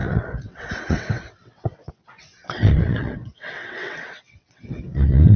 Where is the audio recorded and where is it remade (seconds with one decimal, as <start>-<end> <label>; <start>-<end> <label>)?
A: 0.0-5.4 remade